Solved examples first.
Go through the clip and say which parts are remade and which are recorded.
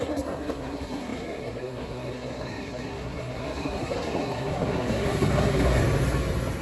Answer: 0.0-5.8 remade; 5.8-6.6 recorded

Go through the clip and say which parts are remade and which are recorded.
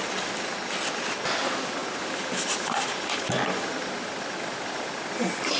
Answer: 0.0-1.8 recorded; 1.8-5.6 remade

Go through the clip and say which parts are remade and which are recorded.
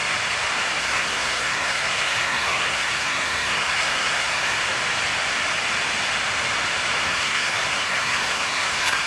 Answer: 0.0-0.8 recorded; 0.8-4.6 remade; 4.6-7.0 recorded; 7.0-9.1 remade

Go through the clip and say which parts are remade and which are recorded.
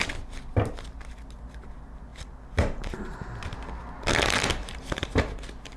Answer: 0.0-2.1 recorded; 2.1-3.1 remade; 3.1-4.6 recorded; 4.6-5.3 remade; 5.3-5.8 recorded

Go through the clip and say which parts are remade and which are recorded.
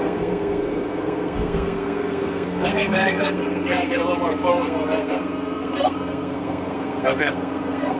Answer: 0.0-4.0 remade; 4.0-4.5 recorded; 4.5-8.0 remade